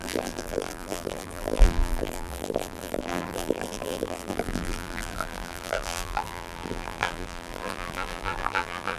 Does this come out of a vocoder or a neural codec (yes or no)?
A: yes